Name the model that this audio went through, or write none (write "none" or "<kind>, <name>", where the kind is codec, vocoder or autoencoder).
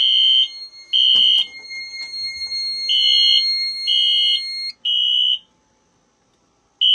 none